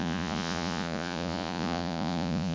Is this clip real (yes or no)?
no